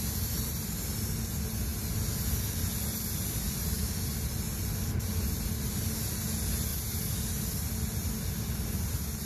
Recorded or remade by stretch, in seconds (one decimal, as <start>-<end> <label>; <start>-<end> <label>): 0.0-9.3 recorded